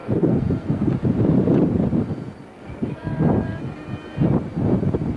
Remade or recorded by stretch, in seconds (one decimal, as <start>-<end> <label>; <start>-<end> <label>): 0.0-0.9 remade; 0.9-2.5 recorded; 2.5-3.1 remade; 3.1-5.2 recorded